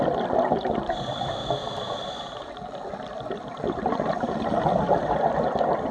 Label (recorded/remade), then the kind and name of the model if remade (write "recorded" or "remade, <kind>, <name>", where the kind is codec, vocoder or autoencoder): recorded